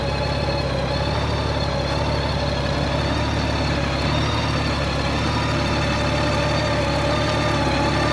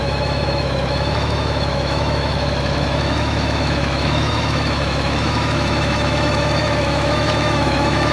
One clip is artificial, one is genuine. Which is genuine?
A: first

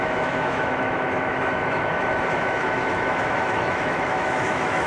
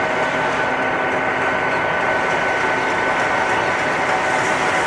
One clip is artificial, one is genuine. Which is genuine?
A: second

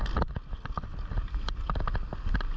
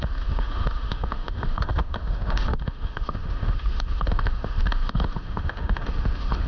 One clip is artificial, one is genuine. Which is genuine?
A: first